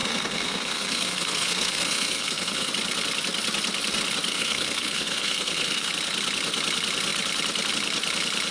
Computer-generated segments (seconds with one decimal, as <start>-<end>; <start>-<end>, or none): 0.0-2.7; 4.3-5.9